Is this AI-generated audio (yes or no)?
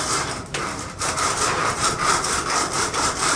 yes